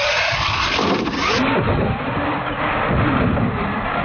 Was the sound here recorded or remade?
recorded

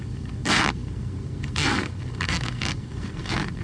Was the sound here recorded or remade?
remade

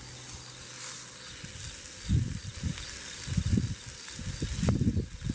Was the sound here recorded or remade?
recorded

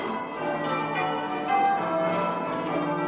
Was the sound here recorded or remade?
recorded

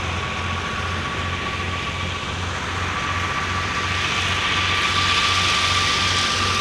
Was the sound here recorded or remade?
recorded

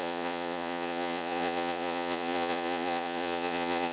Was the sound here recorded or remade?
remade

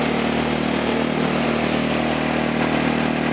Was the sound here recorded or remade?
recorded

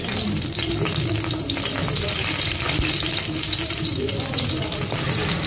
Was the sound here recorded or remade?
remade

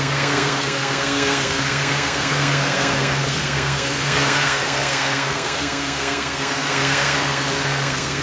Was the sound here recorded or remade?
remade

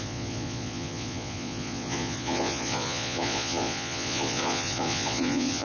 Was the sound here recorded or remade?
remade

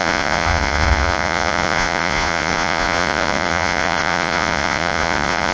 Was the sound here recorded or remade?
remade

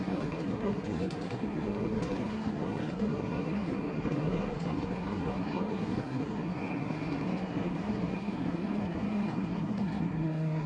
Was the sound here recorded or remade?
remade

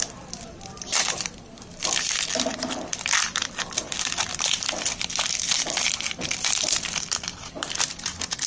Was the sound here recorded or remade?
remade